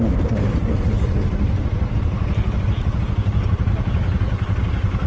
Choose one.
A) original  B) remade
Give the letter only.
A